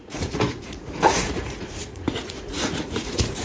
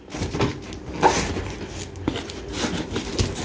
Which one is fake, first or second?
first